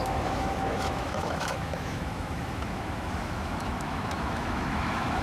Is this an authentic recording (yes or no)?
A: no